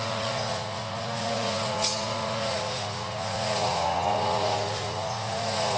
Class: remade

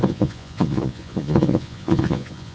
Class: remade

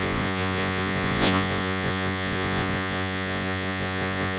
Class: remade